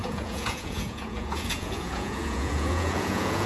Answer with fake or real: fake